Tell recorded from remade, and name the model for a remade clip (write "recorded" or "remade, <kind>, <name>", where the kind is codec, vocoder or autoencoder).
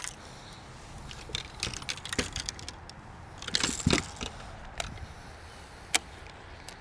recorded